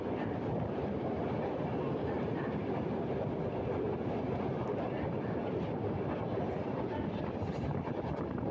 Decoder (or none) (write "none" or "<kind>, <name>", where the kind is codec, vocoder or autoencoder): none